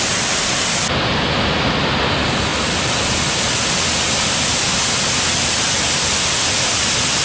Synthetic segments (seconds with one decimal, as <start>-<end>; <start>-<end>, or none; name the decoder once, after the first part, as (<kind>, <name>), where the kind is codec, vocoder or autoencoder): none